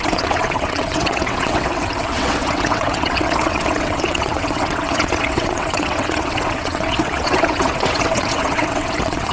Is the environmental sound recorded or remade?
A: remade